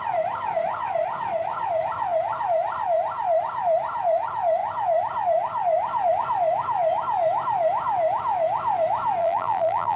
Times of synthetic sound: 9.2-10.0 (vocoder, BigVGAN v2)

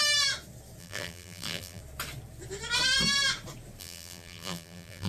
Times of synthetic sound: 0.8-1.8 (vocoder, BigVGAN v2); 3.8-5.1